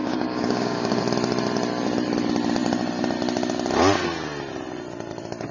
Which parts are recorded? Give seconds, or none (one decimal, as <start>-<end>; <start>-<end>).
1.0-5.5